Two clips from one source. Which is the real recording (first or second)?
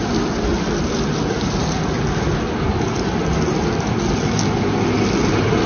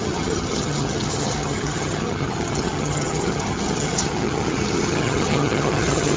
first